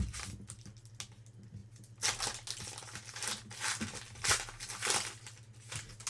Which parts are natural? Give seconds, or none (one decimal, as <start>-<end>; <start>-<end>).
0.0-6.1